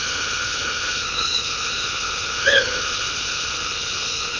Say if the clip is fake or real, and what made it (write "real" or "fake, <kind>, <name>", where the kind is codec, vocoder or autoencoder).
fake, codec, HILCodec